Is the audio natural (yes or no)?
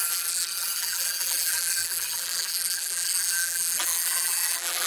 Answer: no